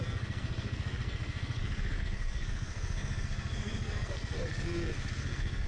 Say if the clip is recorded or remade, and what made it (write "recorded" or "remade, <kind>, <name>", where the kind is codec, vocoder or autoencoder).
remade, codec, SNAC